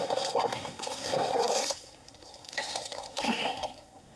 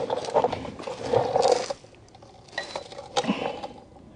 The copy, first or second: first